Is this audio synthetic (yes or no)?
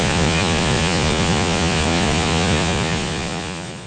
yes